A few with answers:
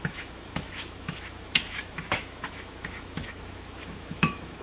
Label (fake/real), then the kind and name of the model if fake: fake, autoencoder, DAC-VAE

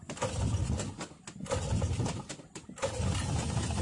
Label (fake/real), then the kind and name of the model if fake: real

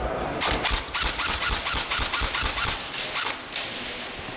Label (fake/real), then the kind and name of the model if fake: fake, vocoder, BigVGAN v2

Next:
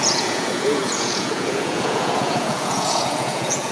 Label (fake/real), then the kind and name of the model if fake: fake, vocoder, Vocos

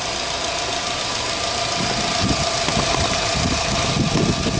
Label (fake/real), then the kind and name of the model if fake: real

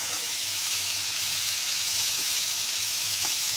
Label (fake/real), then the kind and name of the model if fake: fake, autoencoder, DAC-VAE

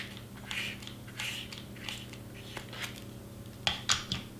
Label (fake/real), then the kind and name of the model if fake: real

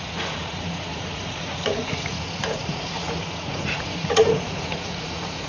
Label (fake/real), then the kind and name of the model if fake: fake, vocoder, Vocos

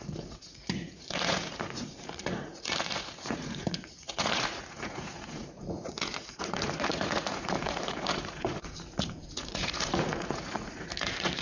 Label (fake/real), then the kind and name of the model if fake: fake, vocoder, Vocos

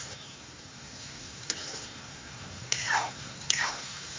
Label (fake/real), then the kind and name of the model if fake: fake, codec, SNAC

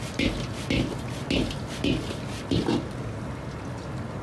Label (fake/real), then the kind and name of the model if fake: real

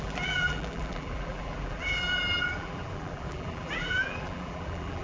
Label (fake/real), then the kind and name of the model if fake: fake, vocoder, BigVGAN v2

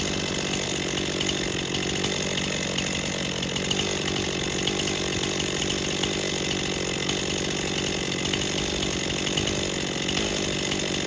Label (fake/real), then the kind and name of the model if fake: real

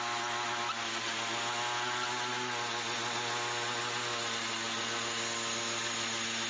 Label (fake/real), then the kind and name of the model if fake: real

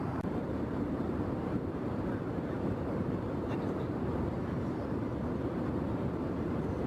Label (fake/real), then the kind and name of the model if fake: fake, vocoder, BigVGAN v2